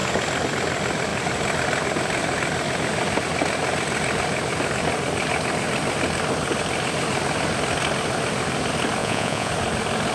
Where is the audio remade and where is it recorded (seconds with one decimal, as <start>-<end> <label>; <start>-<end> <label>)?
0.0-9.0 recorded; 9.0-9.5 remade; 9.5-10.1 recorded